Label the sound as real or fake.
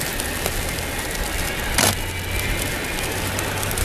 real